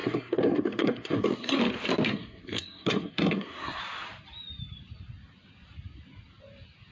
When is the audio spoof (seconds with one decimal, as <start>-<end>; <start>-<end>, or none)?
0.0-1.6; 2.1-3.8